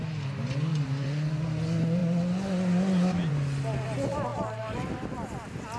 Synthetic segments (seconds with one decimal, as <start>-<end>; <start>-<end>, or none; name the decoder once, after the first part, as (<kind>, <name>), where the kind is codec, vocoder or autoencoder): none

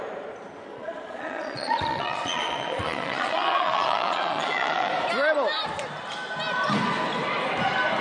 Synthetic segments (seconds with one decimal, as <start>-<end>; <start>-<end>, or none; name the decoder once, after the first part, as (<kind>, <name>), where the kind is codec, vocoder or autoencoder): 0.7-4.9 (vocoder, Vocos)

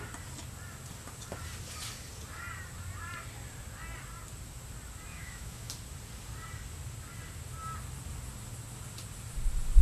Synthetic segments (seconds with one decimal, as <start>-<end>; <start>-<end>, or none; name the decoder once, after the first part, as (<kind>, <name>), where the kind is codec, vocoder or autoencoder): 5.1-5.7 (autoencoder, DAC-VAE)

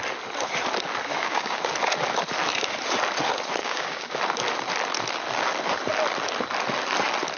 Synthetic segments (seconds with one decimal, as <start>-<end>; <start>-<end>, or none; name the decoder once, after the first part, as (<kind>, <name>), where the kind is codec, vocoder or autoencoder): 1.1-1.6 (codec, DAC); 3.6-4.2

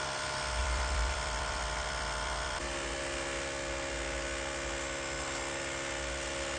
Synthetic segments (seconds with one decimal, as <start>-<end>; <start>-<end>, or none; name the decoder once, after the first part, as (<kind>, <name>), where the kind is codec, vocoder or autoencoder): 0.6-2.6 (vocoder, BigVGAN v2)

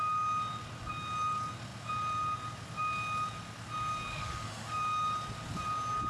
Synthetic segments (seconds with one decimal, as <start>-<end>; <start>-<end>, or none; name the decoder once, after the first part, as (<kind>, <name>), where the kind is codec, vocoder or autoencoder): 4.1-4.8 (autoencoder, DAC-VAE)

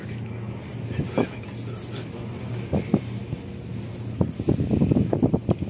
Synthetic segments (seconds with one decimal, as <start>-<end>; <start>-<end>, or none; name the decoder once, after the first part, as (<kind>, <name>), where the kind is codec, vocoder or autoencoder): none